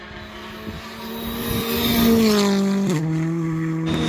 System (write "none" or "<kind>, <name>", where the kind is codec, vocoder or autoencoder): none